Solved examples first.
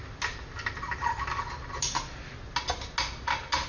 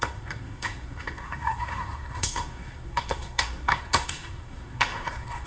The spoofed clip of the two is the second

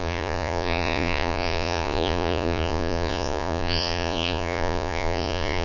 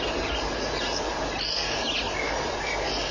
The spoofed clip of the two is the first